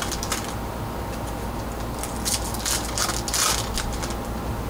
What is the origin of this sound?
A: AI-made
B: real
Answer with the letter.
B